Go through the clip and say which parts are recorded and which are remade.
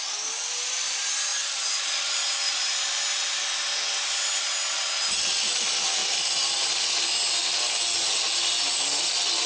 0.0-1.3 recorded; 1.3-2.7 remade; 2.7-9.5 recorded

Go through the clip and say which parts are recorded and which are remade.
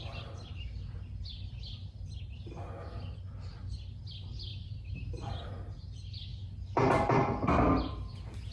0.0-4.5 recorded; 4.5-5.7 remade; 5.7-8.5 recorded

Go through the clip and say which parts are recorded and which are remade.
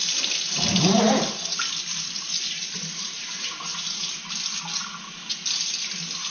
0.0-3.8 remade; 3.8-6.3 recorded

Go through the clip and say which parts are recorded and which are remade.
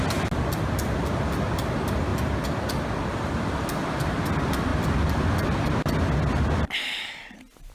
0.0-7.7 recorded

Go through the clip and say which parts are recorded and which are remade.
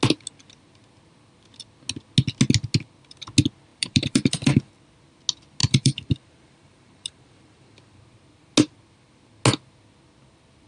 0.0-3.7 recorded; 3.7-4.7 remade; 4.7-5.6 recorded; 5.6-8.0 remade; 8.0-10.7 recorded